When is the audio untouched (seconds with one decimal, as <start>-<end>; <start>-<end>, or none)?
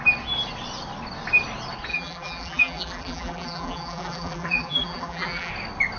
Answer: 0.0-1.9; 5.5-6.0